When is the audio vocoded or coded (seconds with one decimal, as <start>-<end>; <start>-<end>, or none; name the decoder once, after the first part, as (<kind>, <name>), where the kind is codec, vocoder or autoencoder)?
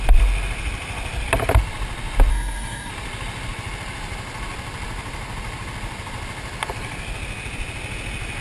2.3-2.9 (codec, DAC)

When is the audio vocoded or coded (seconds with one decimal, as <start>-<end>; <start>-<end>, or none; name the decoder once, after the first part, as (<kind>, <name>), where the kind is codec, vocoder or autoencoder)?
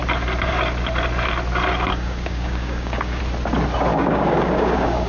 1.9-3.2 (codec, DAC); 3.9-5.1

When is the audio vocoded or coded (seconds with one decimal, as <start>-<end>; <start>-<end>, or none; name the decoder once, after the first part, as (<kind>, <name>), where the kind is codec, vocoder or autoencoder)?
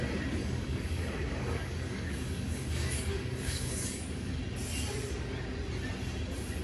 0.4-4.4 (codec, DAC)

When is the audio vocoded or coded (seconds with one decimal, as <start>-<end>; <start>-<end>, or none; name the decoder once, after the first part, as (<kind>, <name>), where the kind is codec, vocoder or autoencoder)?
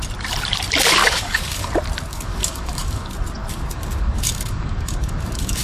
1.0-1.7 (codec, DAC); 2.1-3.1; 3.5-5.6